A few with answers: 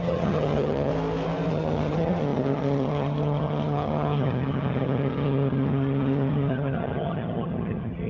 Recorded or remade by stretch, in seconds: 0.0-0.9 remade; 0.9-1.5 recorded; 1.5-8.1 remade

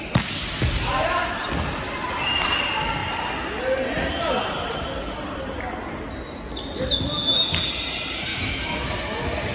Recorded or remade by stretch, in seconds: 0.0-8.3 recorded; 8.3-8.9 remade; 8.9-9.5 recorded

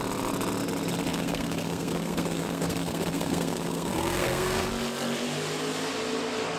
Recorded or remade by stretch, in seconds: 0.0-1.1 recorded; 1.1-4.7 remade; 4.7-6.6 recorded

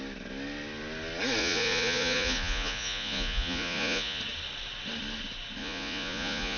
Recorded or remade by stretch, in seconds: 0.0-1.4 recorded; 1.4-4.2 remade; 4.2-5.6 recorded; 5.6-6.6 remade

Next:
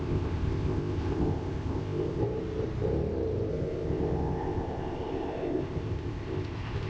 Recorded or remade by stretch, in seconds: 0.0-2.2 remade; 2.2-3.5 recorded; 3.5-6.9 remade